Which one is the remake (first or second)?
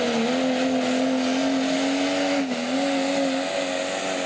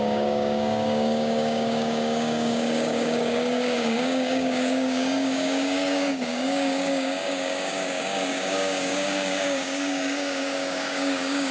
second